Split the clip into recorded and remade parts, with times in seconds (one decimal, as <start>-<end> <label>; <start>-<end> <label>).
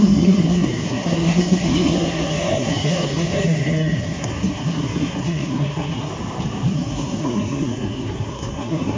0.0-6.1 remade; 6.1-6.7 recorded; 6.7-9.0 remade